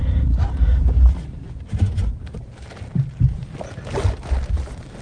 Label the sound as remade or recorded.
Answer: recorded